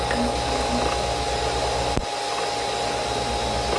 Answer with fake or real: real